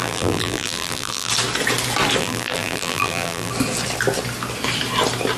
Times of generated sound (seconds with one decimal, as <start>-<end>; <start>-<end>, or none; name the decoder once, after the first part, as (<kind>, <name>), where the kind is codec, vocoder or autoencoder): 0.0-1.3 (vocoder, BigVGAN v2); 2.2-3.5

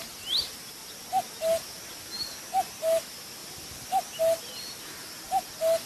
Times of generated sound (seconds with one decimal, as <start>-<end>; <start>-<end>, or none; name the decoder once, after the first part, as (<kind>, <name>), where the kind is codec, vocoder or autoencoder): none

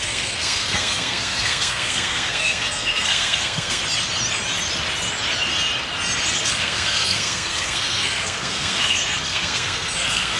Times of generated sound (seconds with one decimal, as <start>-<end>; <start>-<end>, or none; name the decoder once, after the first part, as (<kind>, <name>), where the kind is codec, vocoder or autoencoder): 0.0-3.8 (codec, SNAC); 6.4-10.4

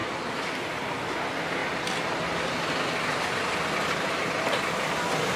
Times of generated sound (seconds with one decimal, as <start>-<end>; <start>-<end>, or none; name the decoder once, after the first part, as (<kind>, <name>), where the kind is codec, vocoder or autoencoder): none

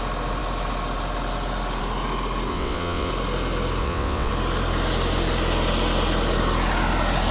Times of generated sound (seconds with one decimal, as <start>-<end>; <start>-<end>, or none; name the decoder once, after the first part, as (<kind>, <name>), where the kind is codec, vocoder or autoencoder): 2.5-3.1 (vocoder, WaveNeXt); 3.8-4.3

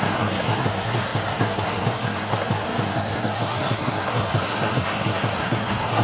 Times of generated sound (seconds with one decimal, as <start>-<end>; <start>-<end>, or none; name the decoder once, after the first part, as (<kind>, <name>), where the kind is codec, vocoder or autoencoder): 0.0-6.0 (codec, SNAC)

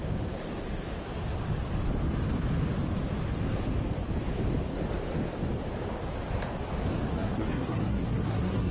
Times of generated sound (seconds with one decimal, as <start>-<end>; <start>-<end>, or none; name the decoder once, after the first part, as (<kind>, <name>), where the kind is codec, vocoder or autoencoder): 7.1-8.7 (codec, SNAC)

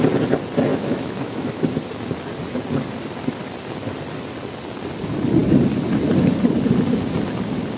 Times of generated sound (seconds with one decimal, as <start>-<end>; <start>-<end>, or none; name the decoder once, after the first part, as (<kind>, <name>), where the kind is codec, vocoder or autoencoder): 0.7-1.6 (autoencoder, DAC-VAE)